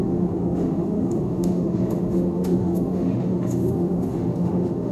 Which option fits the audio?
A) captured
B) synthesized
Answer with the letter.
B